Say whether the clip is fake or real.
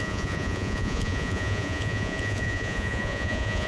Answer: fake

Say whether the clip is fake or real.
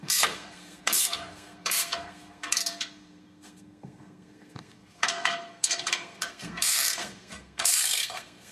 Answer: fake